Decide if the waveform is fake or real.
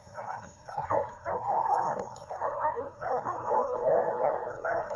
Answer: fake